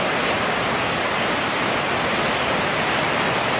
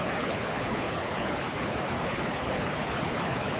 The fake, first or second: second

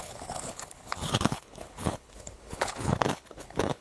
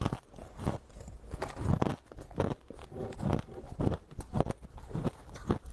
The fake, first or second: first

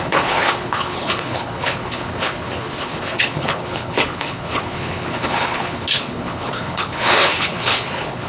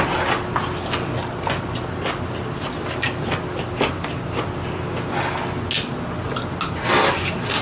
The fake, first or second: first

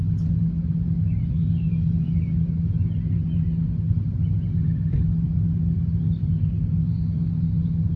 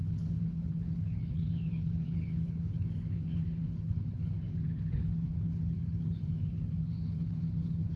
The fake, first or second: second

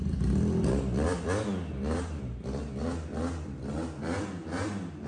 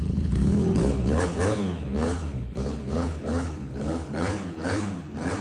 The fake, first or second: second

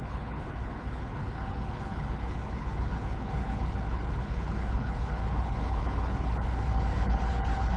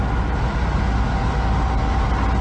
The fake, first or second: first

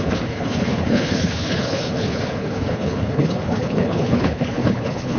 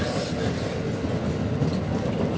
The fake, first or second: first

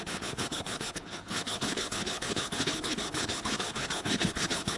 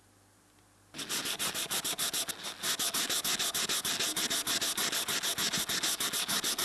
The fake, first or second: first